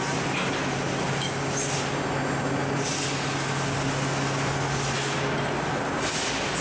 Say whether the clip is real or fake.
real